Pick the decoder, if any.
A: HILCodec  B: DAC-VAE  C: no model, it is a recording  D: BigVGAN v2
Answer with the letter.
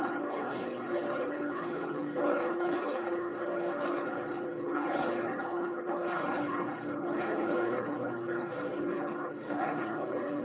A